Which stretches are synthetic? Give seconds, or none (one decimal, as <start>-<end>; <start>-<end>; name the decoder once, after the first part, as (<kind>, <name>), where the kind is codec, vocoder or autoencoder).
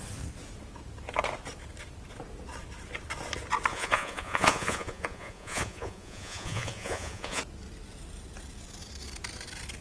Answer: 3.7-7.4 (vocoder, Vocos)